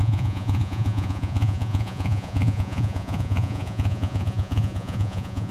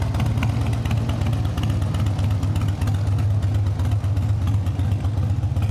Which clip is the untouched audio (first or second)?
second